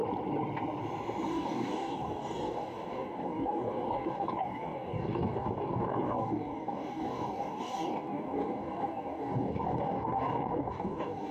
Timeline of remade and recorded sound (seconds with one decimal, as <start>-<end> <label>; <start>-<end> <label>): 0.0-1.3 recorded; 1.3-11.3 remade